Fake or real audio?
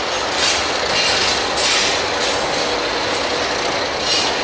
real